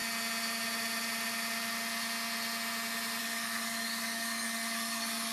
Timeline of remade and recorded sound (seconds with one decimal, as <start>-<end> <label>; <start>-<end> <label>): 0.0-3.2 recorded; 3.2-5.3 remade